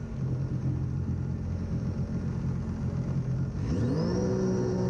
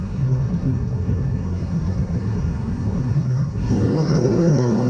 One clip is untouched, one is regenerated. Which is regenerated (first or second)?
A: second